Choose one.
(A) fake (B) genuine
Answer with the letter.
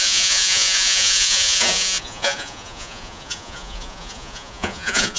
A